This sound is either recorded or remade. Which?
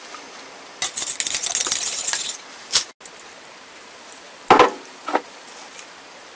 recorded